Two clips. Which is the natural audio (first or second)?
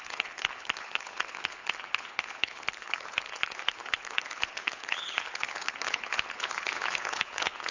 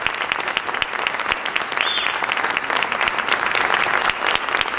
second